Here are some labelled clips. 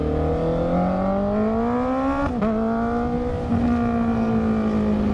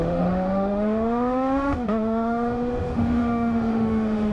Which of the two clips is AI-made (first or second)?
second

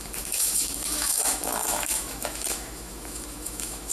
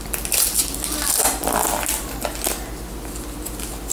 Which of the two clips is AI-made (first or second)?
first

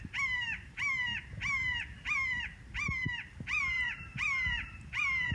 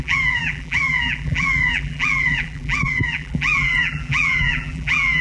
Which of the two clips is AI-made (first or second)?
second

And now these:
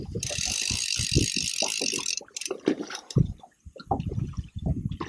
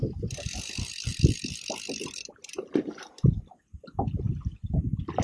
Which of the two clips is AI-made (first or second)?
first